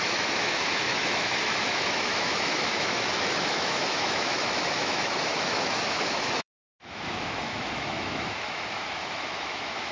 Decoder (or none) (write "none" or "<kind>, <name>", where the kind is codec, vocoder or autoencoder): autoencoder, DAC-VAE